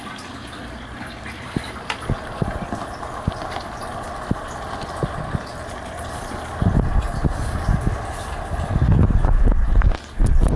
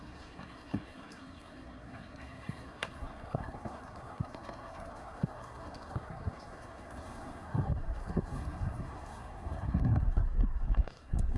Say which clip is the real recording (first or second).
first